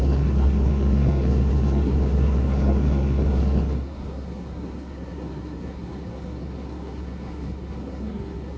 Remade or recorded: remade